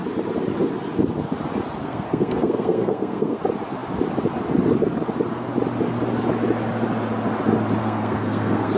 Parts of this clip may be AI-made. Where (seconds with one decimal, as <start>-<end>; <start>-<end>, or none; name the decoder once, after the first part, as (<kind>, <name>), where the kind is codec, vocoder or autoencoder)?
1.8-3.4 (codec, SNAC); 7.8-8.8